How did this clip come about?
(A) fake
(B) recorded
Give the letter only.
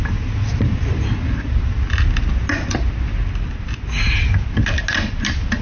B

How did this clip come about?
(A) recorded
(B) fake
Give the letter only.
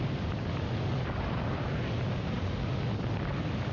A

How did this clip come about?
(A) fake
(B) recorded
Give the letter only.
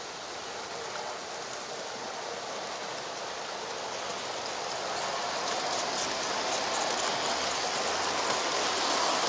B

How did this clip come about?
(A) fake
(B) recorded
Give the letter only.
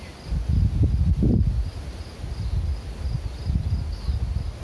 B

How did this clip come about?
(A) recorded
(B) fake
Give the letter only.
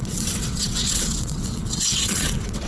B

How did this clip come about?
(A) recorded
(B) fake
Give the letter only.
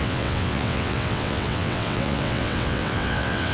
B